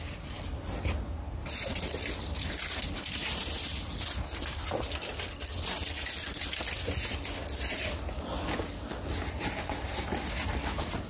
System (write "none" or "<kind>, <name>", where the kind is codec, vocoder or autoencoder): none